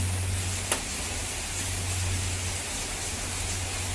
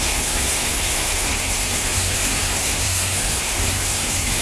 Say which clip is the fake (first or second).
second